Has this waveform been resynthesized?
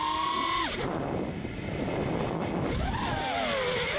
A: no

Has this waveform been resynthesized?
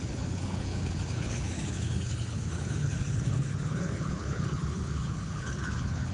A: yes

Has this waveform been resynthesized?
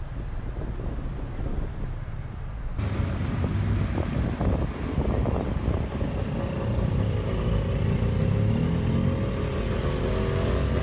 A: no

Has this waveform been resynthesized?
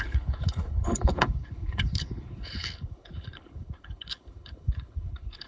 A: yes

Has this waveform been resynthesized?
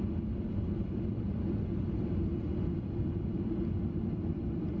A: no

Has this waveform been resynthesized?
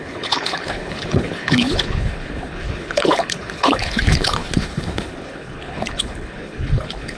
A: yes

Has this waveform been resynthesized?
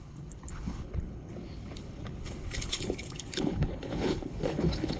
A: yes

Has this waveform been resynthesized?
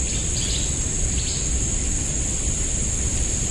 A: no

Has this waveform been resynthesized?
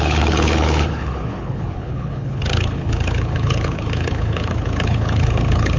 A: yes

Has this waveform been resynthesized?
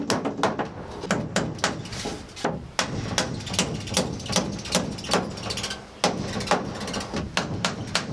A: no